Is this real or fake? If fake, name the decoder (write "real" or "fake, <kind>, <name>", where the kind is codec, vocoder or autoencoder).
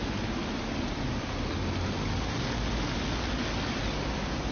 real